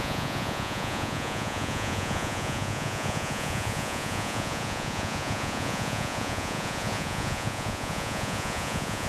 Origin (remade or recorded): remade